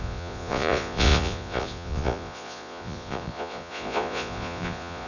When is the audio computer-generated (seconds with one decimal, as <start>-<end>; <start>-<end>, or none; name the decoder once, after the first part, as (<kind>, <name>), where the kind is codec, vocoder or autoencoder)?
0.0-5.1 (vocoder, Vocos)